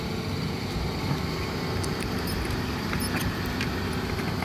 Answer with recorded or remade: recorded